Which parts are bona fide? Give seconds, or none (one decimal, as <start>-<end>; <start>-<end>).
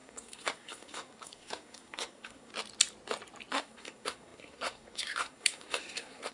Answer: 2.5-3.5